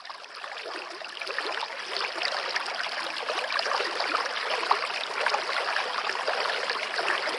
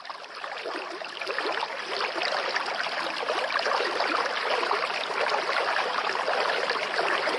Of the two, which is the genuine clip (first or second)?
first